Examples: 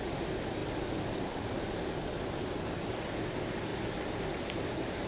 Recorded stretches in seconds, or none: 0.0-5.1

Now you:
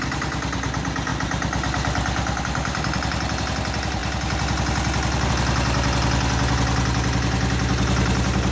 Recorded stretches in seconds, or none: 0.0-8.5

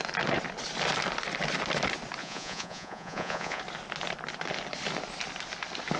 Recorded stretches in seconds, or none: 0.0-2.2; 3.6-6.0

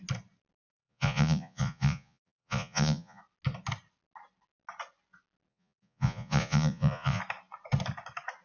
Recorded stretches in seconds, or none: 0.0-0.7; 3.2-5.5; 7.2-8.4

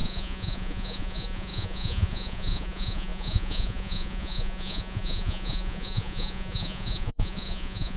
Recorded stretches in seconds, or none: none